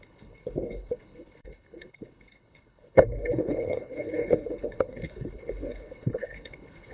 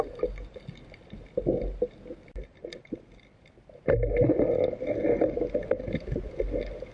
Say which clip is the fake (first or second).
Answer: first